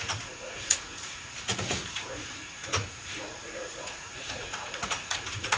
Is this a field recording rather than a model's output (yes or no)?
no